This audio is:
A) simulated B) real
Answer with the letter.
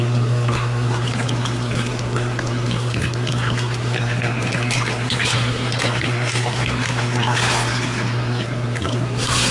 A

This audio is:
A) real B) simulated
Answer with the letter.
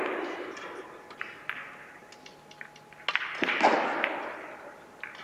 A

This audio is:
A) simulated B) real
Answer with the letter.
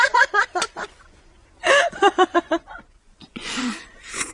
A